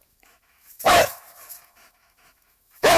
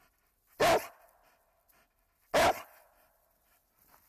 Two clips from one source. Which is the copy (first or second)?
first